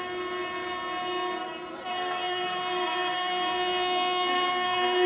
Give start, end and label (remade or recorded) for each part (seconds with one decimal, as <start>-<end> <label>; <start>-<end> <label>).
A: 0.0-1.9 recorded; 1.9-5.1 remade